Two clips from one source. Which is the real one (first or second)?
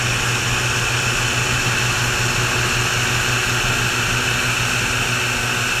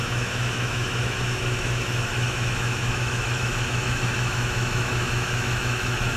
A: first